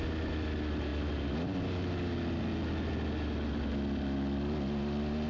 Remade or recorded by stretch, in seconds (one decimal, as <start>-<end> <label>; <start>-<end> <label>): 0.0-5.3 recorded